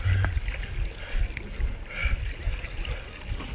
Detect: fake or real real